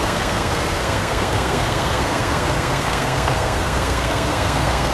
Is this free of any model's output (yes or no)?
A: no